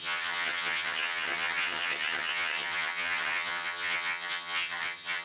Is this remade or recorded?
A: remade